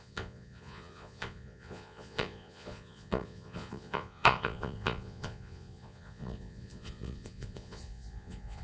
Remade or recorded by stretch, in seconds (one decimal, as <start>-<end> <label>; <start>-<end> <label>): 0.0-8.6 remade

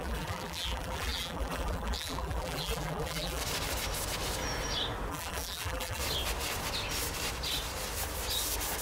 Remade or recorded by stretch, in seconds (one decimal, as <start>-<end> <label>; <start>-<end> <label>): 0.0-3.4 remade; 3.4-5.1 recorded; 5.1-6.0 remade; 6.0-8.8 recorded